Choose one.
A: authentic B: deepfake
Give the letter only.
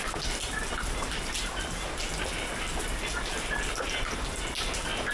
A